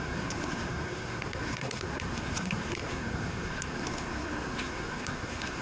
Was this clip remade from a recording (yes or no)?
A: yes